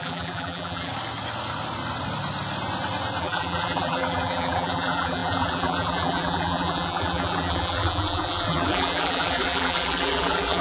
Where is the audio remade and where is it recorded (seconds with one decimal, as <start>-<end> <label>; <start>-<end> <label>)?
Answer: 0.0-0.9 remade; 0.9-3.2 recorded; 3.2-10.6 remade